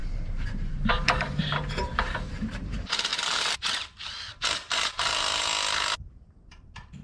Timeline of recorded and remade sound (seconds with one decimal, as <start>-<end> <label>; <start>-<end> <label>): 0.0-5.5 remade; 5.5-6.1 recorded; 6.1-7.0 remade